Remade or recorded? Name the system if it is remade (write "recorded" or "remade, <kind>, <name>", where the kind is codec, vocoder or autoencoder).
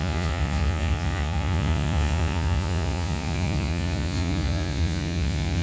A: remade, vocoder, Vocos